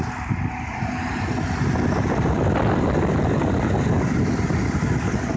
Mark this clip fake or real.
real